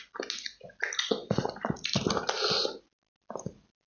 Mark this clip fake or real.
real